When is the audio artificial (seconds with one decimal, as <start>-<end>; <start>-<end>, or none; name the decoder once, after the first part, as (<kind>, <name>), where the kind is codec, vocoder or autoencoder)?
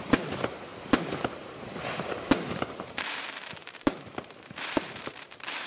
0.0-0.7 (vocoder, BigVGAN v2); 1.3-5.7